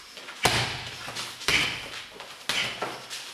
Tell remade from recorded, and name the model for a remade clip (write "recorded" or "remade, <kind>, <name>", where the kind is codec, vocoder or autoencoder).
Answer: recorded